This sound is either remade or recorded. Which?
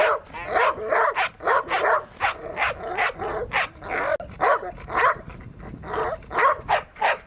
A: recorded